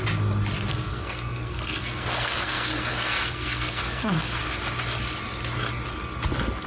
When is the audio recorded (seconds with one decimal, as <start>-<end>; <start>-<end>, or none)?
0.0-0.7; 4.4-6.7